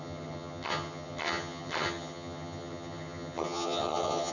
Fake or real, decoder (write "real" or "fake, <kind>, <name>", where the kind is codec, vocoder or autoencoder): fake, vocoder, HiFi-GAN